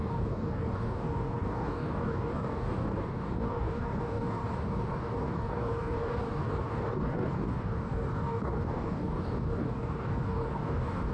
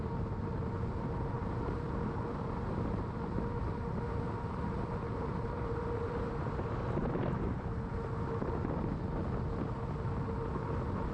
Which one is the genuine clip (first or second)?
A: second